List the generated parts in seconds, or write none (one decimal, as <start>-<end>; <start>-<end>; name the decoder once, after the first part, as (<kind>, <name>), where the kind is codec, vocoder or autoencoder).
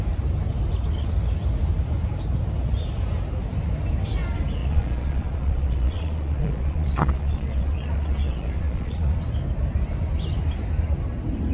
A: 4.6-9.1 (vocoder, Vocos)